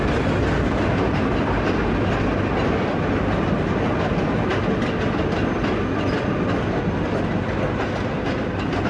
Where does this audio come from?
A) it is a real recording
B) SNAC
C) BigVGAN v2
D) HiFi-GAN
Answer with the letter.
A